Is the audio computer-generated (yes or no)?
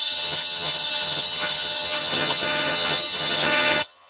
yes